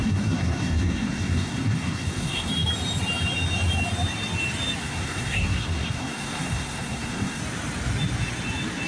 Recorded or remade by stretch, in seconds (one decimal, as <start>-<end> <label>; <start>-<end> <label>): 0.0-2.5 remade; 2.5-4.8 recorded; 4.8-7.4 remade; 7.4-8.9 recorded